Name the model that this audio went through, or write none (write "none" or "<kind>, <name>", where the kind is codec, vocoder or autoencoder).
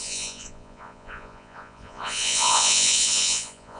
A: vocoder, Vocos